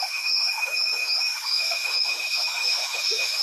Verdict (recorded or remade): remade